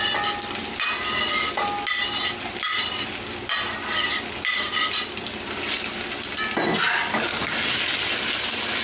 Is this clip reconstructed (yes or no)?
no